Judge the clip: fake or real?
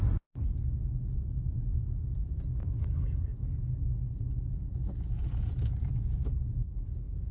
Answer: fake